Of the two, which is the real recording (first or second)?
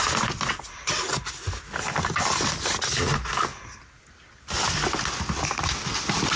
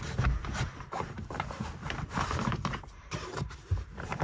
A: first